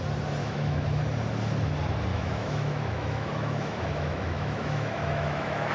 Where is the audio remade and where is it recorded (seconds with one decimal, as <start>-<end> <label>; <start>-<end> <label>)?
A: 0.0-0.4 recorded; 0.4-1.0 remade; 1.0-2.1 recorded; 2.1-5.7 remade